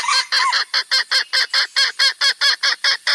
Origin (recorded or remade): recorded